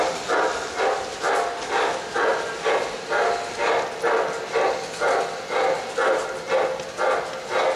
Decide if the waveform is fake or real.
real